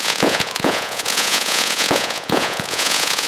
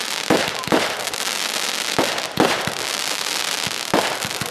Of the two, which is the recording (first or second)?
second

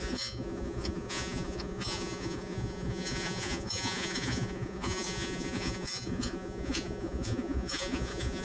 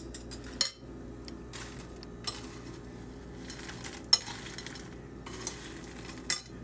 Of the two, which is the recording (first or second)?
second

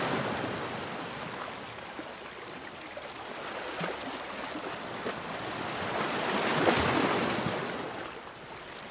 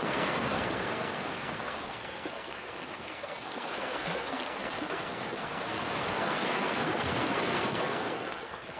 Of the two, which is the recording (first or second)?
first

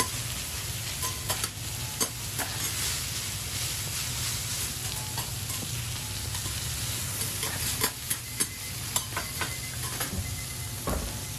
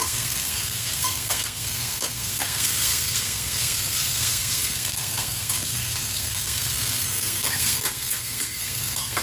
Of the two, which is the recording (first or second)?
first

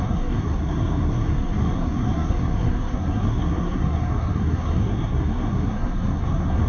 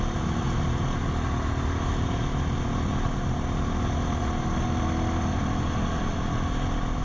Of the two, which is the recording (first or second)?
second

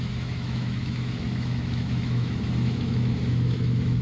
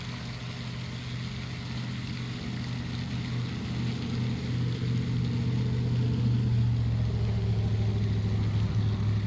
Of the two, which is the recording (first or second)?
second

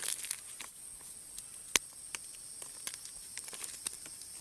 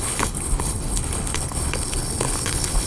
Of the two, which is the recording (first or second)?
first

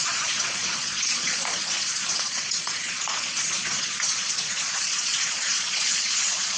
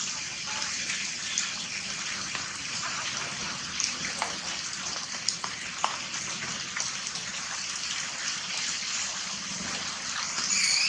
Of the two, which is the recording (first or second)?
second